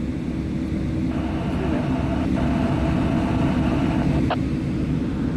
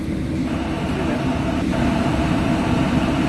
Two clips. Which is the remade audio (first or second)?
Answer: second